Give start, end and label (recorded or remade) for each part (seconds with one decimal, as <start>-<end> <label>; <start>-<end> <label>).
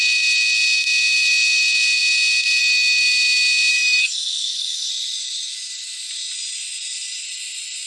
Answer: 0.0-3.7 recorded; 3.7-4.9 remade; 4.9-7.9 recorded